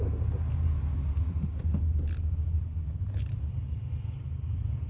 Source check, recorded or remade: recorded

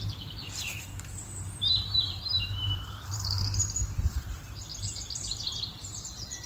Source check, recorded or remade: remade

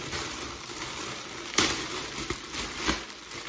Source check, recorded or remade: recorded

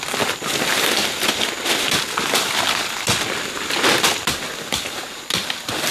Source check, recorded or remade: recorded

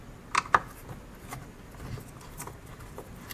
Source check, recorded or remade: recorded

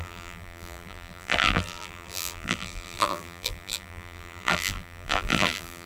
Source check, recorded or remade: remade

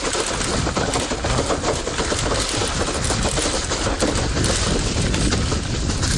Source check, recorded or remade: recorded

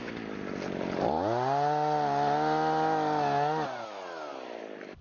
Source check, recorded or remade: recorded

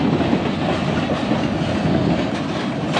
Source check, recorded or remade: recorded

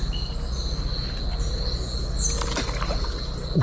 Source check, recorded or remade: recorded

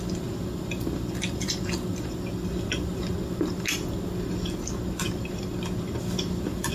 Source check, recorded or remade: remade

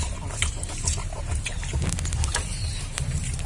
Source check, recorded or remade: remade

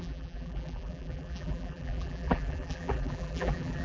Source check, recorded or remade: remade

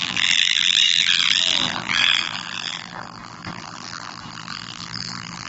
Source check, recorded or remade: remade